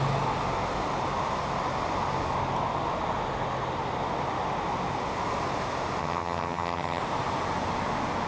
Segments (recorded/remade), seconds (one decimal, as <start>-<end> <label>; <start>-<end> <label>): 0.0-6.0 recorded; 6.0-7.0 remade; 7.0-8.3 recorded